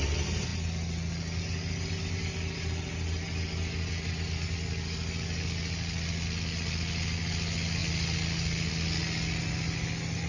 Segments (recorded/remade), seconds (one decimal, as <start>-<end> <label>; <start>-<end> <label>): 0.0-10.3 recorded